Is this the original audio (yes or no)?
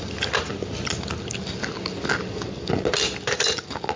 yes